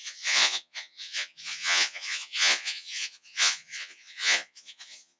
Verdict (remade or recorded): remade